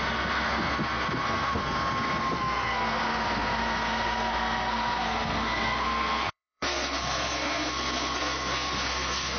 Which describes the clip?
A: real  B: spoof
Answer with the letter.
B